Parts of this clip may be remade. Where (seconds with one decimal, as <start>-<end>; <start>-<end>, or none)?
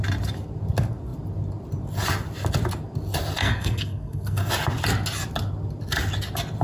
3.4-4.5